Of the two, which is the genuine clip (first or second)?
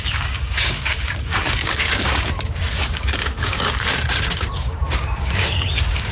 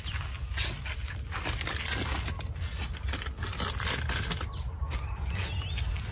second